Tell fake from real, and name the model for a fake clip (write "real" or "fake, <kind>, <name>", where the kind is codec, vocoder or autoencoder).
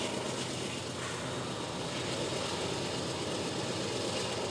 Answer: real